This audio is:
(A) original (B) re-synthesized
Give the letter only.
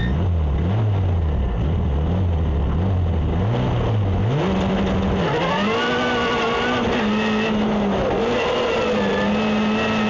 A